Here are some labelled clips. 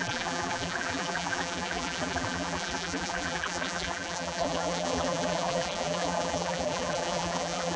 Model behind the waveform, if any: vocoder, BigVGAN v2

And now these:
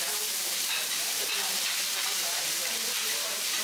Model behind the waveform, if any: vocoder, BigVGAN v2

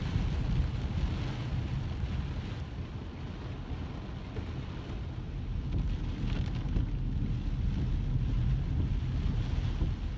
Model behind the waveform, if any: none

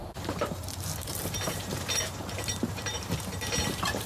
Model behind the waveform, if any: vocoder, BigVGAN v2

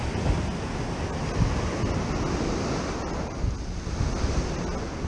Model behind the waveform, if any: none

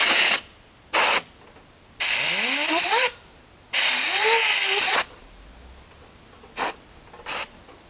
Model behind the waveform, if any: none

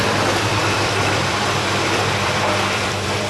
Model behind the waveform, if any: vocoder, BigVGAN v2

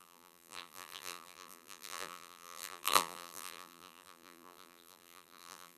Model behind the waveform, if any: vocoder, BigVGAN v2